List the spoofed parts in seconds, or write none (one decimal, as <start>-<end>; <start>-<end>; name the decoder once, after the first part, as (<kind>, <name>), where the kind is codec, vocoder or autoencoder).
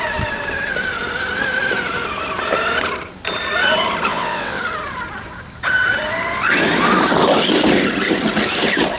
4.1-4.6 (vocoder, WaveNeXt)